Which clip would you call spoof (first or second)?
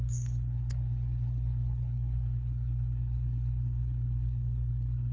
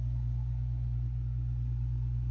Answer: first